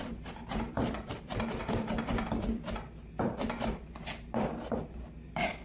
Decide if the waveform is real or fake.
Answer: fake